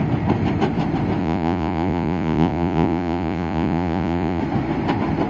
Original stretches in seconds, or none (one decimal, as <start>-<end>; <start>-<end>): 0.0-1.2; 4.4-5.3